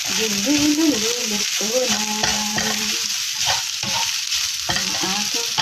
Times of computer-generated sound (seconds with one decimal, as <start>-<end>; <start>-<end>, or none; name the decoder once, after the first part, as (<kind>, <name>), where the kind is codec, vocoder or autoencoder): 1.2-1.9 (vocoder, BigVGAN v2); 2.3-4.2